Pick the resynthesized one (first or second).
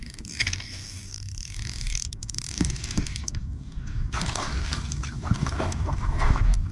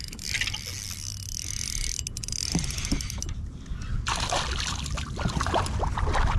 first